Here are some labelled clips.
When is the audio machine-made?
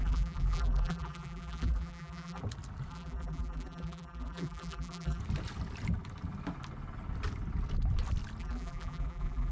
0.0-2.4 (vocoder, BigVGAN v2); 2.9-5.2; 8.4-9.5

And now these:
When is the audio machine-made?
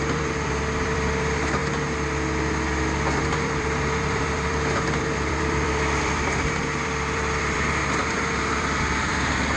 0.0-1.6 (vocoder, BigVGAN v2); 3.2-9.6